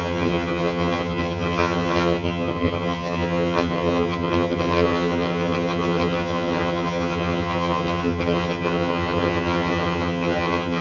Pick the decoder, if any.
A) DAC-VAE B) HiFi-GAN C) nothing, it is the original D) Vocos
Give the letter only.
B